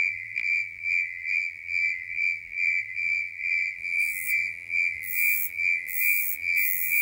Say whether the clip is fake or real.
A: fake